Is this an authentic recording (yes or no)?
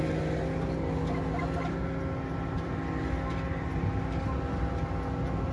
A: yes